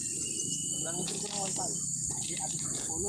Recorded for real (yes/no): yes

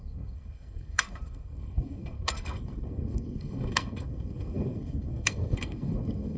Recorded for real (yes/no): no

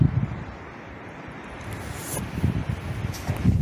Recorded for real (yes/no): yes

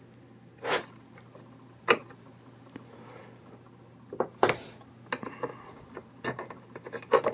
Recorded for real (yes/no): yes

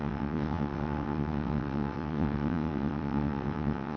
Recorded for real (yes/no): no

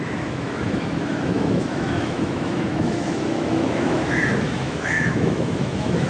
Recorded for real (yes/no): no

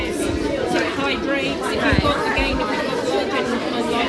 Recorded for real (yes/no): yes